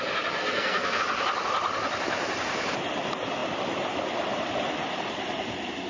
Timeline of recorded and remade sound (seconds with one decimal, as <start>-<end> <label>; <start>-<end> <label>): 0.0-0.4 recorded; 0.4-1.0 remade; 1.0-5.9 recorded